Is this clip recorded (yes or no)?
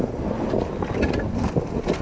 yes